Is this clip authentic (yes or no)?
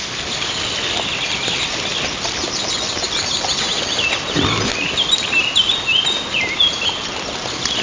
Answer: yes